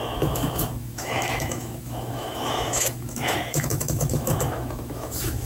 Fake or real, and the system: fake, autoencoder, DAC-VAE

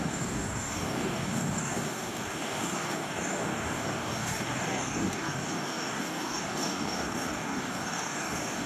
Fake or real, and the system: fake, codec, DAC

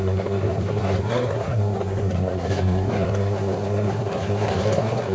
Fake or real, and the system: fake, codec, SNAC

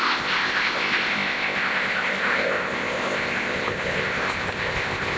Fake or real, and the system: fake, codec, ZipCodec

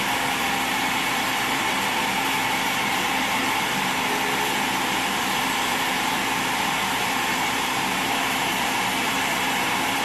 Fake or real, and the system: fake, vocoder, BigVGAN v2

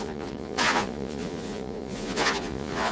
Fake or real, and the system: fake, vocoder, Vocos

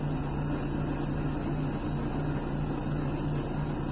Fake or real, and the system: real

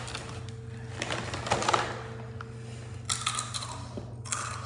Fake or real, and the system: real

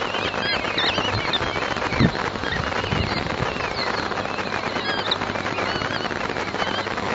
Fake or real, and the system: real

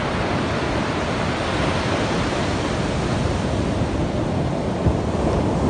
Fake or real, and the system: real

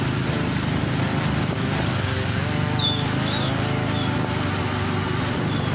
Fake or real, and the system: real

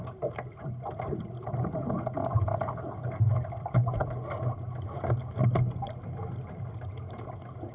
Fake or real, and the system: real